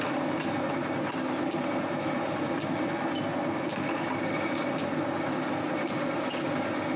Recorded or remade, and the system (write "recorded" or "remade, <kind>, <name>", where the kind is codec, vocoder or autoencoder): recorded